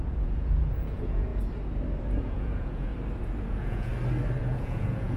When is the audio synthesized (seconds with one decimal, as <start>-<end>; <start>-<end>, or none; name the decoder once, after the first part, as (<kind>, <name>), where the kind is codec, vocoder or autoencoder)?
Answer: 0.0-1.3 (vocoder, Vocos); 2.2-2.9; 3.5-3.9; 4.4-5.2